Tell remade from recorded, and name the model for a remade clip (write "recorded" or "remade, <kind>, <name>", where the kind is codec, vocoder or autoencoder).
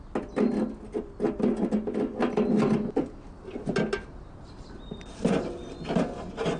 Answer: recorded